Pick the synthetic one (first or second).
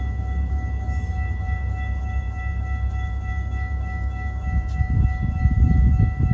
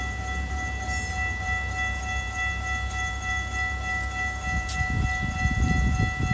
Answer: first